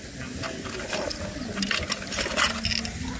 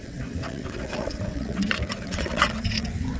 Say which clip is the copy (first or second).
second